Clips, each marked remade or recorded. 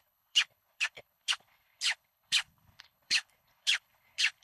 remade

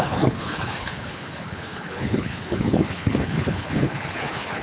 remade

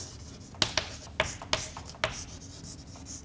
recorded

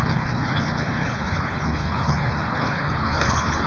remade